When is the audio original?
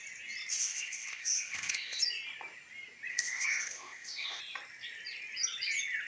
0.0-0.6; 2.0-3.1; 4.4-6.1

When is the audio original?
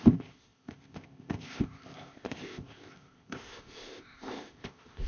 none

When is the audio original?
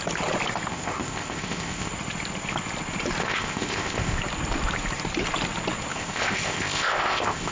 0.0-0.7; 1.9-3.2; 4.2-5.9